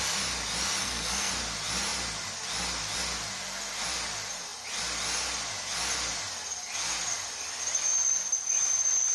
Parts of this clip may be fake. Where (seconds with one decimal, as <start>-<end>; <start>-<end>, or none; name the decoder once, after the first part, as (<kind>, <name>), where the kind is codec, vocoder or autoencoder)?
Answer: 0.8-1.3 (codec, SNAC)